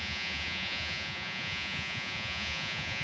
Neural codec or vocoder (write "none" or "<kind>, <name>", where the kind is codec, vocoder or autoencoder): vocoder, Vocos